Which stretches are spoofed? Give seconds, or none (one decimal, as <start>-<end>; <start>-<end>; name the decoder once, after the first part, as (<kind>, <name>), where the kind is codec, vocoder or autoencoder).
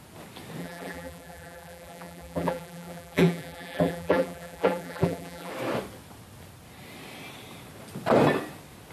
0.6-5.5 (vocoder, BigVGAN v2)